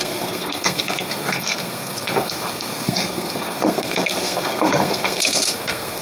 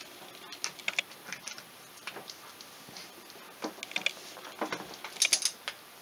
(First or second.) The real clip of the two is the second